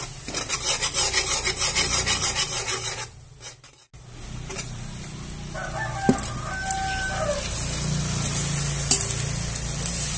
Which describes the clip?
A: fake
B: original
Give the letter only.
B